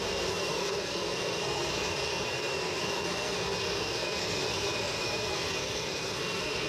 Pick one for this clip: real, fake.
fake